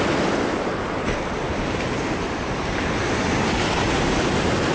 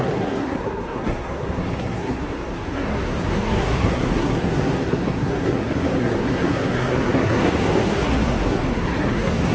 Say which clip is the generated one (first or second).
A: second